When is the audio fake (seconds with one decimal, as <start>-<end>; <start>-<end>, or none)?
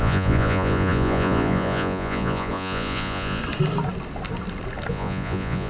0.0-3.4; 4.9-5.7